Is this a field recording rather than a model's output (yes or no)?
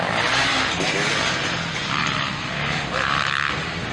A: yes